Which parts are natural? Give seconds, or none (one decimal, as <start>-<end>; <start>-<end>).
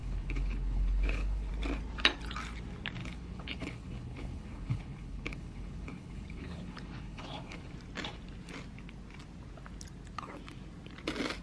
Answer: 1.5-3.0; 7.7-11.4